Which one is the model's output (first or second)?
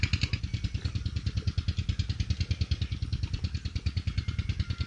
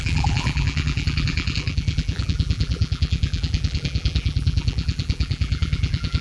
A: second